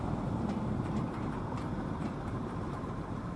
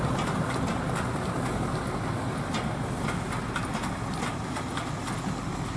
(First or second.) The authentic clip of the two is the second